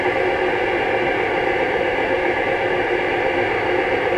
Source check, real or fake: fake